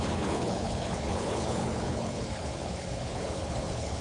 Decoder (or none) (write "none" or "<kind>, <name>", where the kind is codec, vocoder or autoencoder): codec, HILCodec